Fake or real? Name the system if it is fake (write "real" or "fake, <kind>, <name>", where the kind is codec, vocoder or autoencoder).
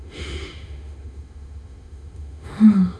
fake, autoencoder, DAC-VAE